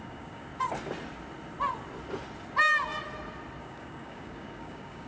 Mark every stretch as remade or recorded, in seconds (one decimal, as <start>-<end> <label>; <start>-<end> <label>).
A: 0.0-0.5 remade; 0.5-3.6 recorded; 3.6-5.1 remade